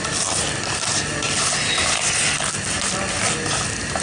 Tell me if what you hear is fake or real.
real